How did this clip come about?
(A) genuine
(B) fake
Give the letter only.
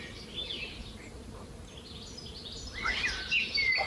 A